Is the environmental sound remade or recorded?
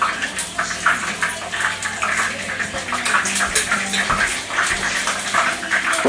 recorded